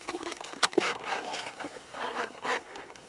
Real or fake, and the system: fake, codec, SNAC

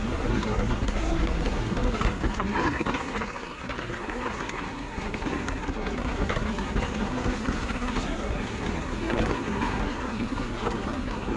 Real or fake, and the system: fake, codec, SNAC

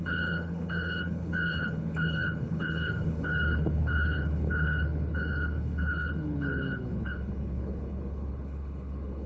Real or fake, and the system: fake, codec, HILCodec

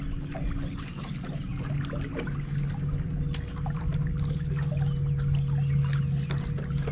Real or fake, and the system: real